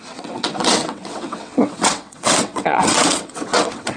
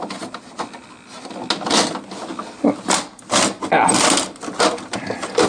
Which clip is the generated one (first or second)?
first